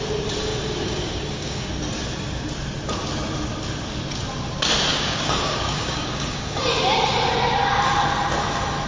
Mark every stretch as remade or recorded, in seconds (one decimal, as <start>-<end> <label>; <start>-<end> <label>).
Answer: 0.0-0.5 recorded; 0.5-1.7 remade; 1.7-4.9 recorded; 4.9-6.6 remade; 6.6-8.9 recorded